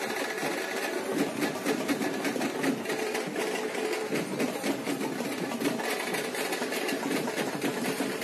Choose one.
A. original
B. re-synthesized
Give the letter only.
A